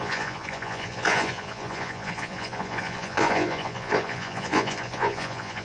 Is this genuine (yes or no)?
no